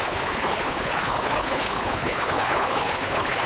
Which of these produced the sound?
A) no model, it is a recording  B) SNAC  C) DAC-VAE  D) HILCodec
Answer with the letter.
D